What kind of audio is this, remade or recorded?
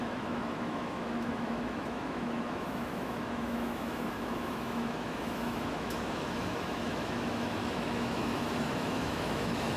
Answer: remade